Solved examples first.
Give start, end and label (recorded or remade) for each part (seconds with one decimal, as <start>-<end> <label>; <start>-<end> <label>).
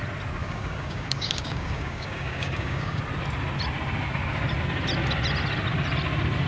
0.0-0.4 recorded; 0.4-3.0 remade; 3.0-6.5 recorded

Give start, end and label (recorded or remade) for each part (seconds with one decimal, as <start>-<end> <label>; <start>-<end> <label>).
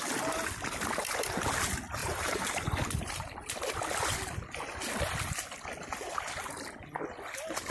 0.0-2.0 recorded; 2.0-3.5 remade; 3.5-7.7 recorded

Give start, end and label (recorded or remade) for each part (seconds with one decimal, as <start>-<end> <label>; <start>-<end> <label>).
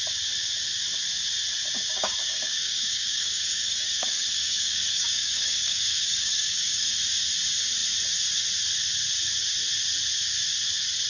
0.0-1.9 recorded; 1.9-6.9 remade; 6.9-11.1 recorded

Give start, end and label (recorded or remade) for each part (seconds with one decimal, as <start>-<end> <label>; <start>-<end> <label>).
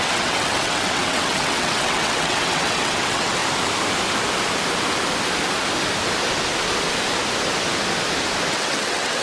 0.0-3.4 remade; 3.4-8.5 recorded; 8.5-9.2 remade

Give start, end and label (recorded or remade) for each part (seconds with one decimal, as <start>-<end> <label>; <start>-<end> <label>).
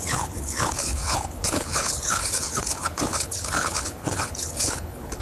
0.0-5.2 remade